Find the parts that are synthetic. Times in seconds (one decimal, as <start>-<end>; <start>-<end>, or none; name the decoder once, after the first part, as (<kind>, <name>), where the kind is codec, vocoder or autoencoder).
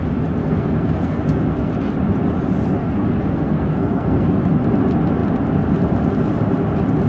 0.4-1.7 (codec, SNAC); 2.8-4.4